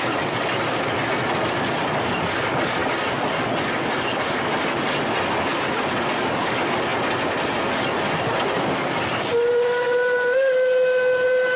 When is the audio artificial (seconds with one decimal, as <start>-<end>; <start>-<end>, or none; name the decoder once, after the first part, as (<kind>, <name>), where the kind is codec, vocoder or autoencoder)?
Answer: none